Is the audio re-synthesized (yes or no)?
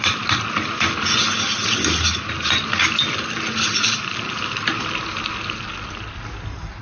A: no